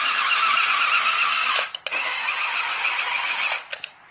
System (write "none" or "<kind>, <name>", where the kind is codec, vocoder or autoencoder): none